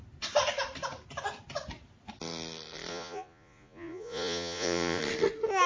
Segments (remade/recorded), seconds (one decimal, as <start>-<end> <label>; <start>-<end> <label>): 0.0-2.9 recorded; 2.9-5.0 remade; 5.0-5.7 recorded